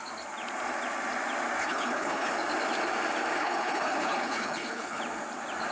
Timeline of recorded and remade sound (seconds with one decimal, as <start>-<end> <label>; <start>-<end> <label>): 0.0-1.6 recorded; 1.6-2.3 remade; 2.3-3.4 recorded; 3.4-5.0 remade; 5.0-5.7 recorded